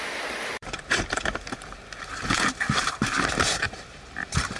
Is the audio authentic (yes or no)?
no